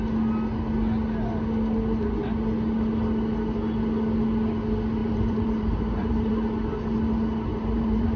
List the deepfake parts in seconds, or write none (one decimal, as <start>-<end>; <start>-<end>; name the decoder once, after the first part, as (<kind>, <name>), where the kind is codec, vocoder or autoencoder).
5.0-6.3 (vocoder, BigVGAN v2); 7.5-8.2